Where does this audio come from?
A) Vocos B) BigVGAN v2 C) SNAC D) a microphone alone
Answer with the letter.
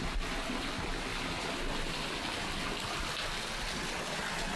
D